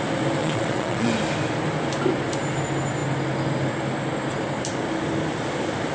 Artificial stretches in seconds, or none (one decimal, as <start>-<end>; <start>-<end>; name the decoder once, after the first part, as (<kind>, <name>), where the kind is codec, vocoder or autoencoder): 0.4-1.1 (vocoder, Vocos)